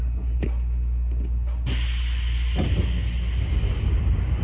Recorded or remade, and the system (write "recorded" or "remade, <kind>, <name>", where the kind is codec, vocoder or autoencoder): recorded